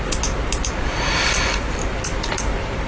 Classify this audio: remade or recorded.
recorded